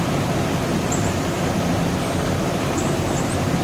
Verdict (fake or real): fake